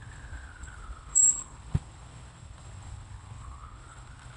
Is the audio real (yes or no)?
no